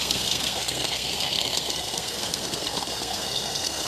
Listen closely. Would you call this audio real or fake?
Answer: fake